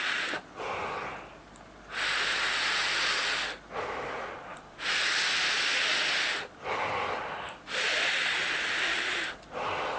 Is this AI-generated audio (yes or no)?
no